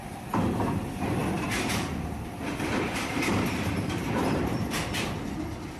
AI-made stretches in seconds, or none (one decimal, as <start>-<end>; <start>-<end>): 1.2-4.4